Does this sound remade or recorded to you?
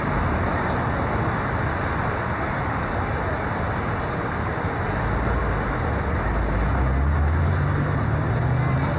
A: recorded